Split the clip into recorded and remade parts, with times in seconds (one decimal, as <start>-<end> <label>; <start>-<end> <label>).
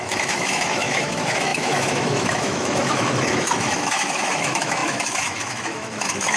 0.0-6.4 remade